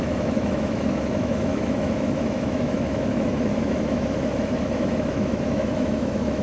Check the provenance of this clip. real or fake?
fake